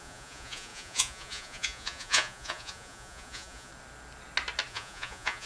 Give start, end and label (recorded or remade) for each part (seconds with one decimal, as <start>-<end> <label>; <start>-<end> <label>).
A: 0.0-3.7 remade; 3.7-4.7 recorded; 4.7-5.5 remade